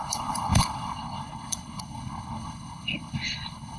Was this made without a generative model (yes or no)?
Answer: no